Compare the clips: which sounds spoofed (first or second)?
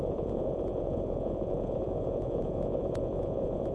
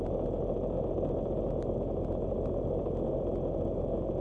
first